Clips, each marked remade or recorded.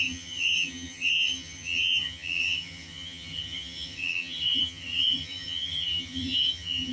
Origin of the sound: remade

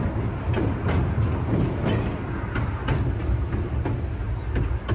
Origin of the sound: recorded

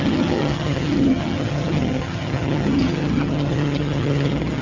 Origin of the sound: remade